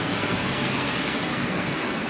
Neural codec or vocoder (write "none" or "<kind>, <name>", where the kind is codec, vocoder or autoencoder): codec, SNAC